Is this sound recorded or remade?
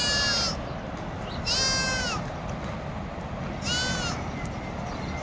recorded